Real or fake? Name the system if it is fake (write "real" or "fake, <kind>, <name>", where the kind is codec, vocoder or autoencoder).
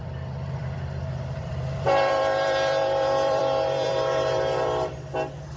fake, vocoder, BigVGAN v2